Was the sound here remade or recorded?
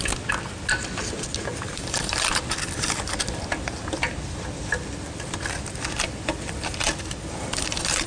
recorded